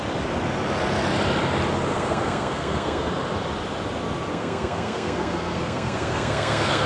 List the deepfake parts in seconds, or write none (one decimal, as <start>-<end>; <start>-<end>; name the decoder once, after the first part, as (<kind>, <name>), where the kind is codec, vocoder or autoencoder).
1.9-3.1 (codec, SNAC); 4.3-6.9